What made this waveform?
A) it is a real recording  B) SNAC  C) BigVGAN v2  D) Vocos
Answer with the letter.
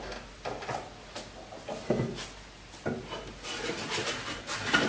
A